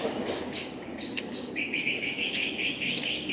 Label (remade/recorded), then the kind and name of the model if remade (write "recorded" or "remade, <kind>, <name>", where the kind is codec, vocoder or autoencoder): remade, codec, DAC